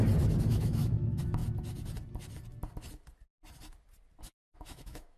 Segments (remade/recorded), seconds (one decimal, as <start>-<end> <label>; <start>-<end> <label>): 0.0-0.5 recorded; 0.5-1.4 remade; 1.4-4.2 recorded; 4.2-5.2 remade